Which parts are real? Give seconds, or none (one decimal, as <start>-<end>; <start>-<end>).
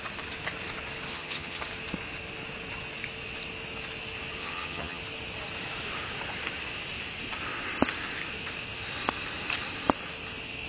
0.0-1.1; 1.6-4.4; 5.0-10.7